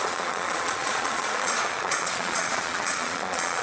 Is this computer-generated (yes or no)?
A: yes